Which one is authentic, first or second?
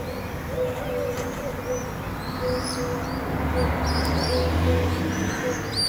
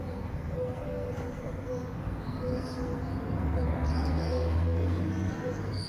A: first